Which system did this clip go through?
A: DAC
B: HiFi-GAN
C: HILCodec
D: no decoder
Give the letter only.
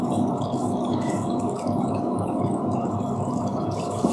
A